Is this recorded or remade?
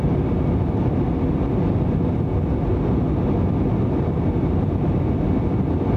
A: recorded